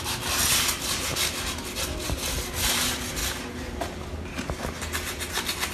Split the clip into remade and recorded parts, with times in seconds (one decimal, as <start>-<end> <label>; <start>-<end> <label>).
0.0-5.7 recorded